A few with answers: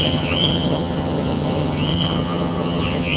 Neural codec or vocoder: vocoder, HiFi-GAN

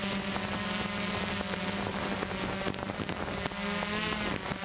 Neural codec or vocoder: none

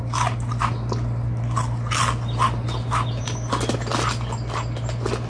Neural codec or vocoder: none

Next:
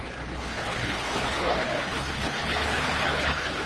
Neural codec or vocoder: codec, HILCodec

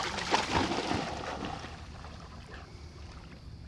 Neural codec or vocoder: none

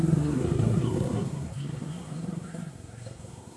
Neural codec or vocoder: codec, SNAC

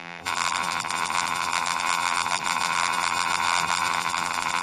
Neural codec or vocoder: vocoder, BigVGAN v2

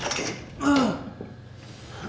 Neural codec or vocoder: none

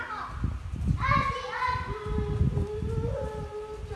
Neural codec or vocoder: none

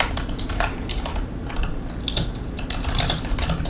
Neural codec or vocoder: none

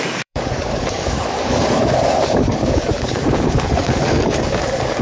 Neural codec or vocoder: codec, DAC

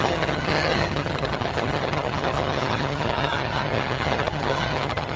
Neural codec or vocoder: vocoder, HiFi-GAN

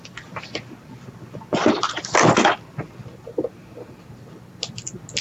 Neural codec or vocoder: none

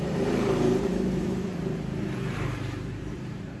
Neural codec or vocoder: vocoder, BigVGAN v2